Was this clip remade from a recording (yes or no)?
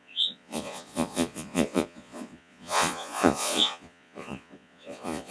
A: yes